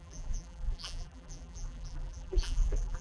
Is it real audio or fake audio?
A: fake